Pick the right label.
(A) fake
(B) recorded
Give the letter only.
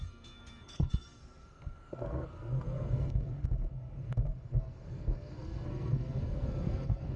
A